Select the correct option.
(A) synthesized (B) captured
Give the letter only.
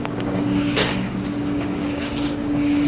A